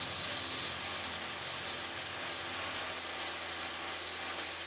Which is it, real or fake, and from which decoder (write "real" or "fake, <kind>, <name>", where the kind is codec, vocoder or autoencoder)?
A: real